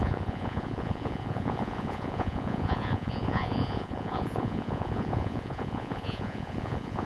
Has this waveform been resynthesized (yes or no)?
yes